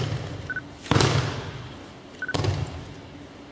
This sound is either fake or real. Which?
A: real